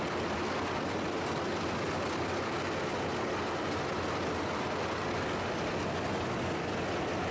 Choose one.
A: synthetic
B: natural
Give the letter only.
B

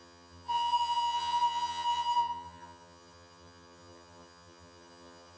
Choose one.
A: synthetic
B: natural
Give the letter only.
A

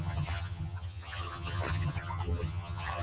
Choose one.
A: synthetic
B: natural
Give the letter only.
A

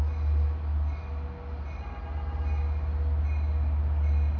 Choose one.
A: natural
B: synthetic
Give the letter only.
A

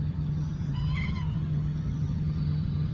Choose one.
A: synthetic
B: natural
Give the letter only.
A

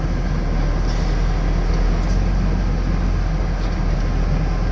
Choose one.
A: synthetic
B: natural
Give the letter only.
B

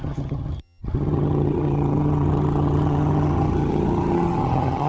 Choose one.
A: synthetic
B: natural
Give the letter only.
A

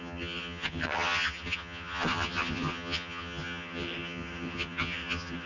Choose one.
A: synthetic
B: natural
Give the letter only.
A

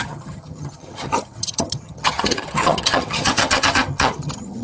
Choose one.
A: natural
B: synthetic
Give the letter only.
B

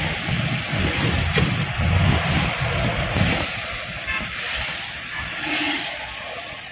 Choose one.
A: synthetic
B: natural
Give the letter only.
B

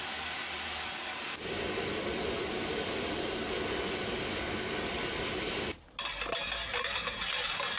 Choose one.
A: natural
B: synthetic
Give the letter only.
A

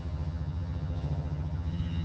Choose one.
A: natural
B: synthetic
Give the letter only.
B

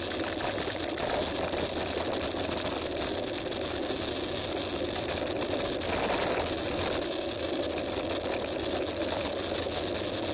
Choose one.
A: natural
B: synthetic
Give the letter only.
A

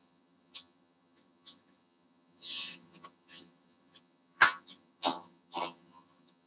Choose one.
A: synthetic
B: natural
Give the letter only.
A